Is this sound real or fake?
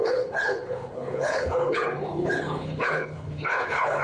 fake